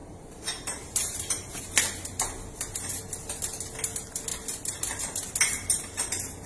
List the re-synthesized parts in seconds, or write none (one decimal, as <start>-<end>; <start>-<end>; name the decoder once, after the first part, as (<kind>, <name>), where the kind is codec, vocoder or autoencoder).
0.0-1.6 (vocoder, BigVGAN v2)